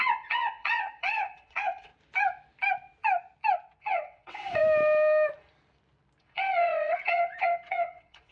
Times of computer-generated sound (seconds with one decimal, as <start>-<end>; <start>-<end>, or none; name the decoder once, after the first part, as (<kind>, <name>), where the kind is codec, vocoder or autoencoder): 0.0-1.9 (vocoder, WaveNeXt); 3.8-4.6; 6.2-8.3